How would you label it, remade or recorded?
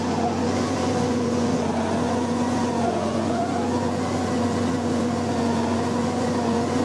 remade